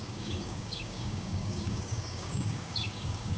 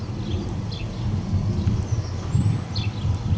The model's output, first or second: first